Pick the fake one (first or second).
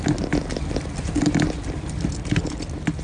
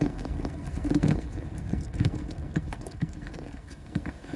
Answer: second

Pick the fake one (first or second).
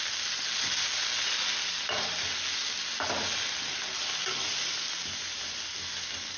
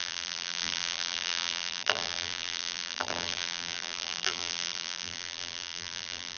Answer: second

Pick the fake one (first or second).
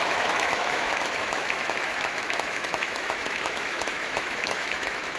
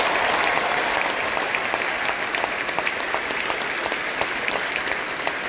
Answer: first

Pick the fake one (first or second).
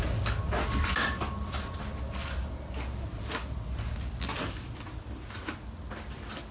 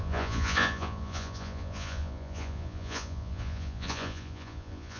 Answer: second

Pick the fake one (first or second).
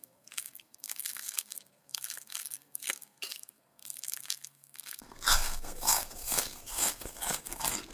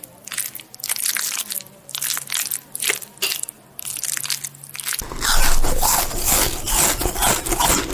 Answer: first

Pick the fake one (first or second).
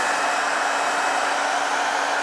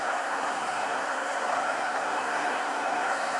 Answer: second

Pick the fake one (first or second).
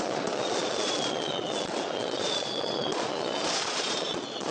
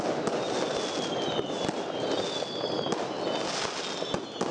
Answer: first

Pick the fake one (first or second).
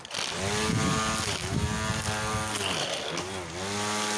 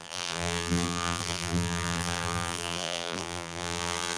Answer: second